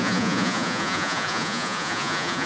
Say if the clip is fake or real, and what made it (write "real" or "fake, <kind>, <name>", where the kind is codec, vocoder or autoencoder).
fake, vocoder, Vocos